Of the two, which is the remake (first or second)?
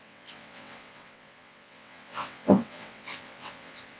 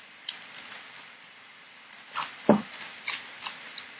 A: first